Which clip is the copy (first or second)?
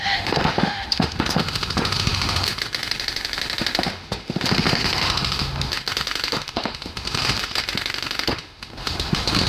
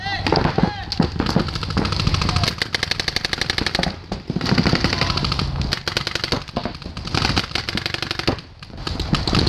first